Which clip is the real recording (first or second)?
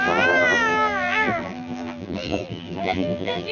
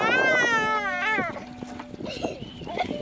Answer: second